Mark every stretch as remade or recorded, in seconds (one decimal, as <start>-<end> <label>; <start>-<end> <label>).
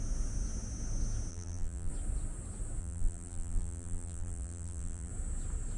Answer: 0.0-1.3 recorded; 1.3-1.9 remade; 1.9-2.8 recorded; 2.8-5.1 remade; 5.1-5.8 recorded